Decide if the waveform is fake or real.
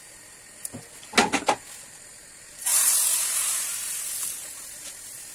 real